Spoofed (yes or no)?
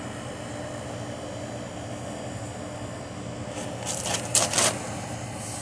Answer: no